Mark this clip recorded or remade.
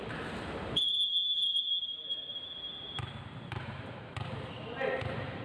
remade